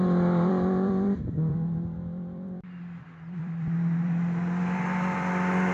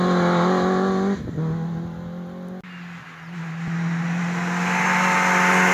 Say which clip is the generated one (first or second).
first